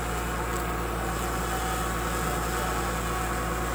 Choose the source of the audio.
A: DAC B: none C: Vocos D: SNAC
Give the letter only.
B